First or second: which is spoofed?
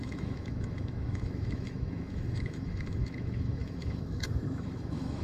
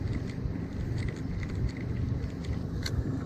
first